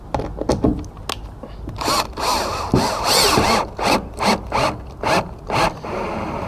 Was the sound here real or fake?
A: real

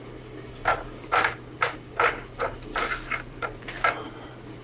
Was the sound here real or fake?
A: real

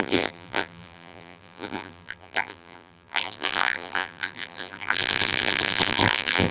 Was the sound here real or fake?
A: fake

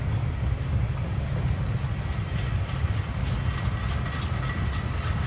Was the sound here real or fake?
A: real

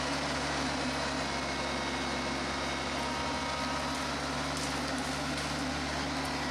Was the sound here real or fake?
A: real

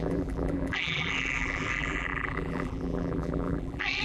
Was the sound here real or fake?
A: fake